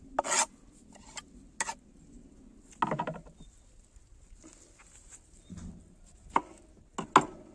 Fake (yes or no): no